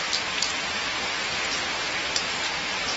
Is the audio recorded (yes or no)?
yes